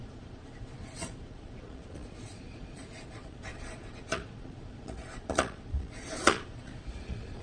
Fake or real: fake